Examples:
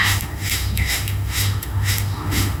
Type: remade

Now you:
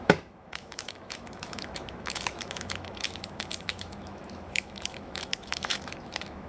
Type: remade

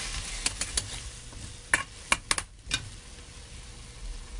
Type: recorded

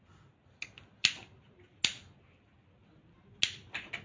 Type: recorded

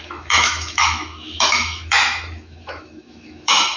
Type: remade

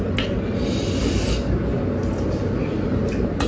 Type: recorded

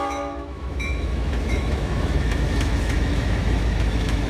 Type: remade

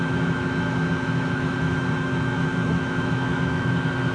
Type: remade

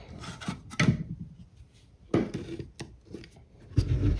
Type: recorded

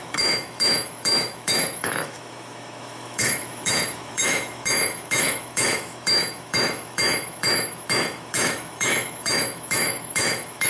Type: remade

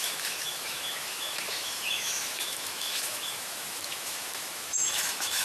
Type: remade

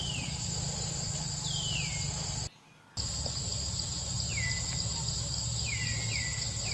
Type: recorded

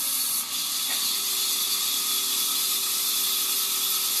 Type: recorded